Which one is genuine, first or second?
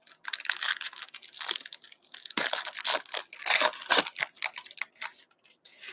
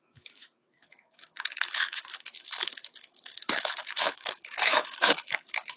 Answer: first